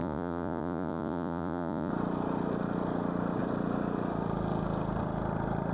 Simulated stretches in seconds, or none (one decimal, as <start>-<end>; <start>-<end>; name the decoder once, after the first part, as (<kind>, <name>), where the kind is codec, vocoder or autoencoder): 0.0-1.9 (vocoder, Vocos)